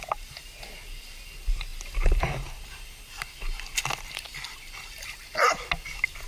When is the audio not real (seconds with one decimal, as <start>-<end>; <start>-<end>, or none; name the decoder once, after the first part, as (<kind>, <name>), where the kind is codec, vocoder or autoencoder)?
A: 1.7-2.2 (vocoder, BigVGAN v2)